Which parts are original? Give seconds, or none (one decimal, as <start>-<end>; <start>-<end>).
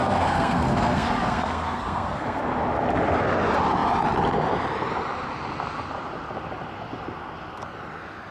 2.4-8.3